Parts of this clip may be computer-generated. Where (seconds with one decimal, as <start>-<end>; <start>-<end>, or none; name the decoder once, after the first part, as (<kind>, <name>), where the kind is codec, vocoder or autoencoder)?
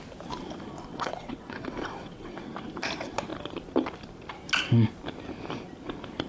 0.9-2.5 (vocoder, WaveNeXt)